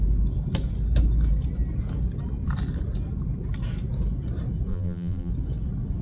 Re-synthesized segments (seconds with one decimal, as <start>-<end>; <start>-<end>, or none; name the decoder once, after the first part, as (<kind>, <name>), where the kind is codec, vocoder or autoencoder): 4.7-5.3 (vocoder, BigVGAN v2)